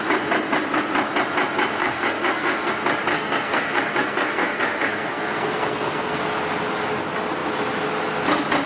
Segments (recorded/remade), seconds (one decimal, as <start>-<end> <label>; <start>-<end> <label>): 0.0-1.8 recorded; 1.8-2.7 remade; 2.7-3.1 recorded; 3.1-6.2 remade; 6.2-8.7 recorded

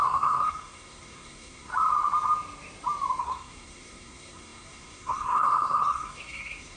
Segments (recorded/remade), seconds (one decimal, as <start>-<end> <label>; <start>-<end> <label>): 0.0-1.7 remade; 1.7-3.2 recorded; 3.2-6.8 remade

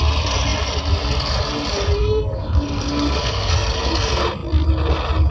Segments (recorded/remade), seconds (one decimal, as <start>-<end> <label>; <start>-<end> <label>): 0.0-2.0 recorded; 2.0-3.9 remade; 3.9-5.3 recorded

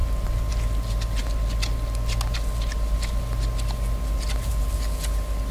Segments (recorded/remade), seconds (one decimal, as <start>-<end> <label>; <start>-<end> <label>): 0.0-5.5 recorded

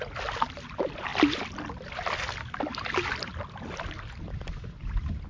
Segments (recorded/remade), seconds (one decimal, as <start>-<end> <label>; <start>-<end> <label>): 0.0-5.3 recorded